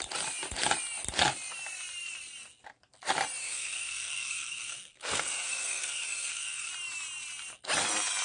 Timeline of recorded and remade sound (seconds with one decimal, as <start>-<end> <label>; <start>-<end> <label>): 0.0-3.4 recorded; 3.4-6.7 remade; 6.7-8.2 recorded